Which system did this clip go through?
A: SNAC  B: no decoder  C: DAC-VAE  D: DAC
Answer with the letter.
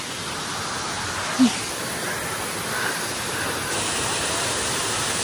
B